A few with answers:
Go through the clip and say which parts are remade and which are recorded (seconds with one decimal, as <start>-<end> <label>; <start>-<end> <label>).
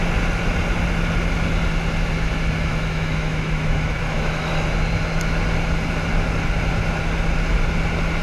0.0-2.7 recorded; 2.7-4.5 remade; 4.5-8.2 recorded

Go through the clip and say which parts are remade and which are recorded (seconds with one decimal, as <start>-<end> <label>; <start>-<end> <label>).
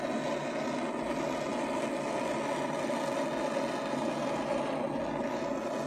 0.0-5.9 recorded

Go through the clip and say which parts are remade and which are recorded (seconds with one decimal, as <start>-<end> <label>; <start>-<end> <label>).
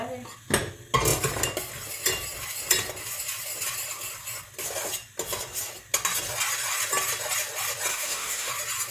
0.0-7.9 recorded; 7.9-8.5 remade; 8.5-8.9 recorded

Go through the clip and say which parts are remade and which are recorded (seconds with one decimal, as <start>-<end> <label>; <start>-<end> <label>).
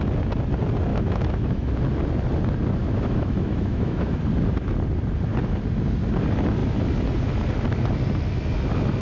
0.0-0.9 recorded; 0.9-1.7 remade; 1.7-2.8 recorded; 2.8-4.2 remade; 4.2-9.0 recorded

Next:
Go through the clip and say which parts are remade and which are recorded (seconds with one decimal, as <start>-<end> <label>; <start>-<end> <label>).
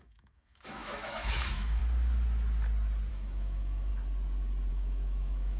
0.0-1.8 remade; 1.8-3.1 recorded; 3.1-3.9 remade; 3.9-4.7 recorded; 4.7-5.6 remade